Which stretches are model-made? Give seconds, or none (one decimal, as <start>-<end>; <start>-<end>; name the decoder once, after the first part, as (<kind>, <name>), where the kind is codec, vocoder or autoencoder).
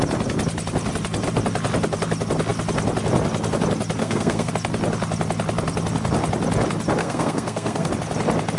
4.0-4.5 (codec, SNAC); 7.0-7.9